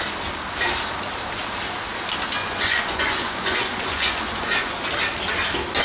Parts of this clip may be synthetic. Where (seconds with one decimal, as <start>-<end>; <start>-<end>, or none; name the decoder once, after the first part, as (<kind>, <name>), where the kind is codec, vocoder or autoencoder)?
2.4-4.8 (vocoder, Vocos)